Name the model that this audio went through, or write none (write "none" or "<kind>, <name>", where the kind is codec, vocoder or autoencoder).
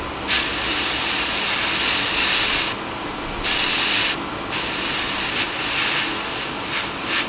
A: none